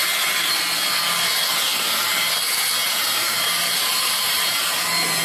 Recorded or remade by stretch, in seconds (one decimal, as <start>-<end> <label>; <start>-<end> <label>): 0.0-1.7 recorded; 1.7-2.3 remade; 2.3-2.8 recorded; 2.8-4.7 remade; 4.7-5.2 recorded